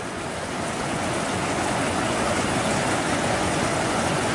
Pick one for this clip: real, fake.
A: fake